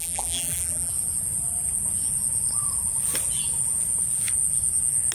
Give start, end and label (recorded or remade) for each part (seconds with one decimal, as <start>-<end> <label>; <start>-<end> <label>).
0.0-0.9 remade; 0.9-5.1 recorded